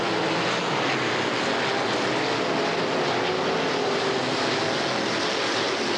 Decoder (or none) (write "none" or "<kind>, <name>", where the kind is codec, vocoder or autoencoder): none